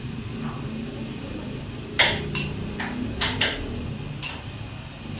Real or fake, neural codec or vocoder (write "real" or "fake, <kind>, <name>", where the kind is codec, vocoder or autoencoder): real